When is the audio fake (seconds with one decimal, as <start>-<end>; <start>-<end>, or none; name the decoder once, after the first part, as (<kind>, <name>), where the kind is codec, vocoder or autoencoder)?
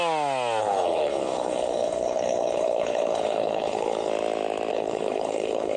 0.6-4.1 (codec, HILCodec); 4.7-5.8